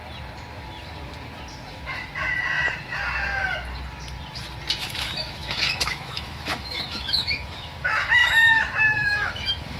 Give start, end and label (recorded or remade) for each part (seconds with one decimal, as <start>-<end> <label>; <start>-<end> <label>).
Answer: 0.0-4.8 recorded; 4.8-9.8 remade